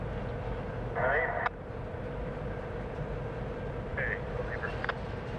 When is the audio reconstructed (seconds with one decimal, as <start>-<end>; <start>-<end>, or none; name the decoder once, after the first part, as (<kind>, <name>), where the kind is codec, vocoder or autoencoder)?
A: 1.1-2.7 (vocoder, BigVGAN v2)